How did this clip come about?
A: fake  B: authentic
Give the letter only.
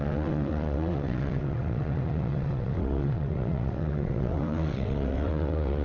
A